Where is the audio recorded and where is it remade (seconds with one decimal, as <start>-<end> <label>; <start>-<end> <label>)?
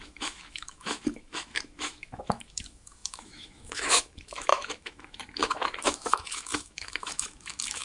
0.0-7.8 remade